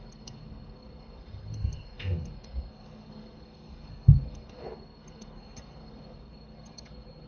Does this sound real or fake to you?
fake